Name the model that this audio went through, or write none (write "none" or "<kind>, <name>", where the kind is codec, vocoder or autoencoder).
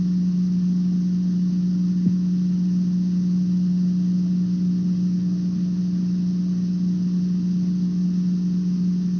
none